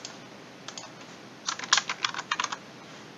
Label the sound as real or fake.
real